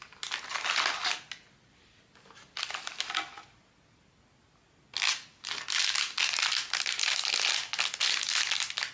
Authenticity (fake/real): real